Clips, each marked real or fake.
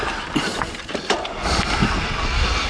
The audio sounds real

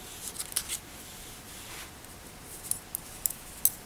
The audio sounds real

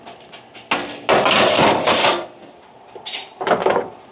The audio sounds real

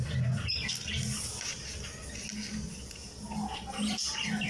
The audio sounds real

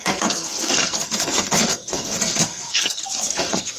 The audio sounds fake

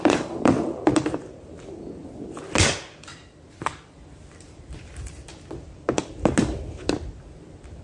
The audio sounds real